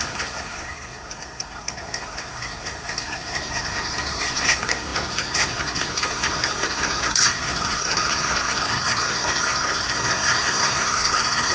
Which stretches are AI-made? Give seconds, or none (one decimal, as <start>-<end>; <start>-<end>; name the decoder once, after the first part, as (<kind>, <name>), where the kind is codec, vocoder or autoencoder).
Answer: 0.0-11.5 (codec, SNAC)